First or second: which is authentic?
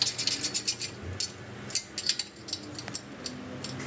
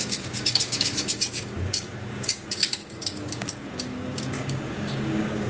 first